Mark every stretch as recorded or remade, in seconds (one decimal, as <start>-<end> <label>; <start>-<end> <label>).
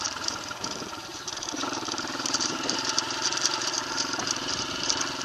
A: 0.0-5.2 remade